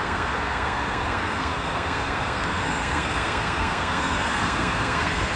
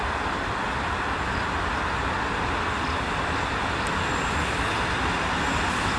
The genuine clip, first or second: second